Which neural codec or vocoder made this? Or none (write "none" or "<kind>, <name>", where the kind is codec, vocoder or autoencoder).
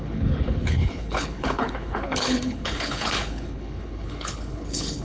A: codec, HILCodec